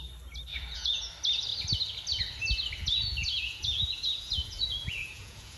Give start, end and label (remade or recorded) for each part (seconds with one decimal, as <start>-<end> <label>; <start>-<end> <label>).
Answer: 0.0-0.5 recorded; 0.5-1.1 remade; 1.1-2.8 recorded; 2.8-5.6 remade